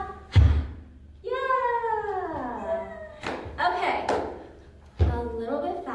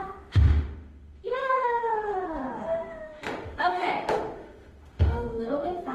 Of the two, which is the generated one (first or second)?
second